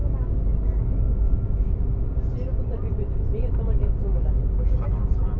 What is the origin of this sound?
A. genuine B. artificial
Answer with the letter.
A